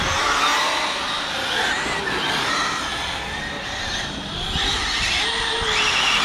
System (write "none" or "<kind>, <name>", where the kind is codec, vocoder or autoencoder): none